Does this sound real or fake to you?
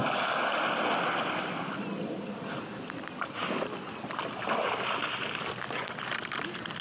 real